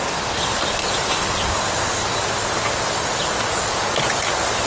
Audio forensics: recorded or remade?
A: recorded